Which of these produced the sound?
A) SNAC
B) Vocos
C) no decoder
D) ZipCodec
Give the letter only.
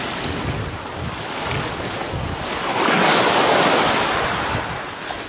C